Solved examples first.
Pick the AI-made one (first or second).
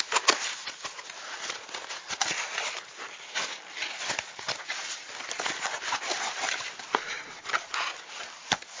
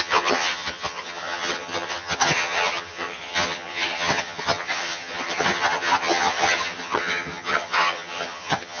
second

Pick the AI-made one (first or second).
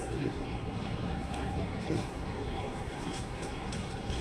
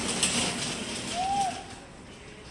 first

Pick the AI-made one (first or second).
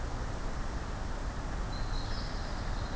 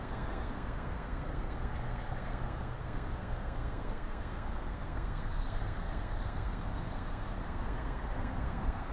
second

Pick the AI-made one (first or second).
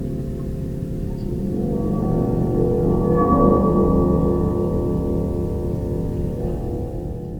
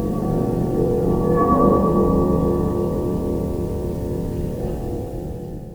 second